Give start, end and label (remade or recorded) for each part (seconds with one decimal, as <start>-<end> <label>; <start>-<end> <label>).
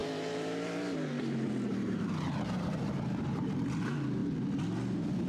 0.0-4.2 remade; 4.2-5.3 recorded